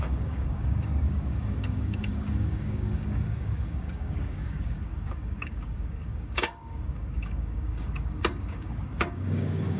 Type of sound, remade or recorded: remade